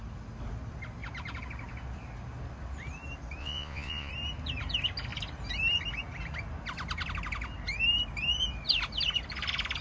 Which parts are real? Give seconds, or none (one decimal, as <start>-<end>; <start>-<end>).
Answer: 0.0-3.4; 4.1-9.8